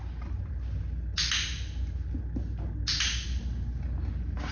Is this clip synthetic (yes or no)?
no